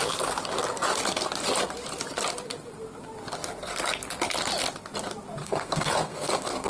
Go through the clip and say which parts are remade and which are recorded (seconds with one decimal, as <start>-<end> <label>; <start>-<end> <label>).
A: 0.0-5.4 recorded; 5.4-6.7 remade